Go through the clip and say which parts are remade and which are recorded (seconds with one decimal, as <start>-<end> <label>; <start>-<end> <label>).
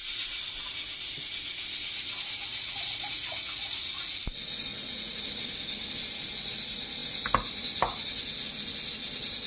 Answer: 0.0-0.6 remade; 0.6-2.4 recorded; 2.4-4.2 remade; 4.2-4.7 recorded; 4.7-5.2 remade; 5.2-9.5 recorded